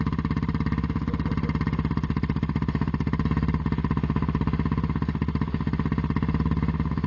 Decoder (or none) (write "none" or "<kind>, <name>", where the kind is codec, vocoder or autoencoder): none